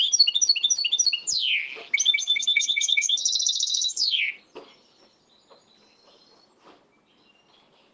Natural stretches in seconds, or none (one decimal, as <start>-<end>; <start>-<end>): 0.0-2.2; 4.2-7.9